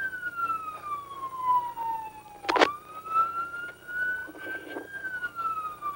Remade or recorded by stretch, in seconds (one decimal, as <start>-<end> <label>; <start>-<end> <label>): 0.0-6.0 remade